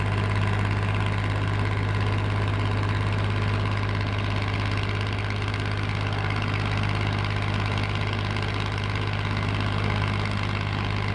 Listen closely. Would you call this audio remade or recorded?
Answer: recorded